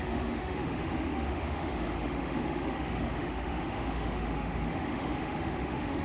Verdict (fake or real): fake